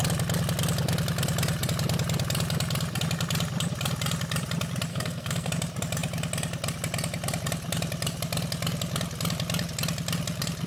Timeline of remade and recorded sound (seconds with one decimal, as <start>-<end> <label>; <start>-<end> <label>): 0.0-4.9 recorded; 4.9-5.5 remade; 5.5-10.7 recorded